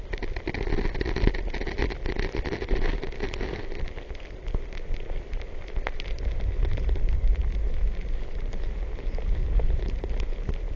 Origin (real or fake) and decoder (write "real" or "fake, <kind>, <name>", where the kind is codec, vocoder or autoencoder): real